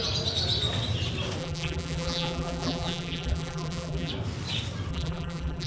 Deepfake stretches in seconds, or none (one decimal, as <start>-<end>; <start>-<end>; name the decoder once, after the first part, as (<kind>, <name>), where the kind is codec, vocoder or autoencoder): 1.4-4.1 (vocoder, BigVGAN v2); 4.9-5.7